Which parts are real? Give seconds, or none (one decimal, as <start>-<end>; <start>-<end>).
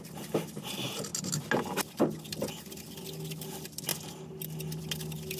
0.0-5.4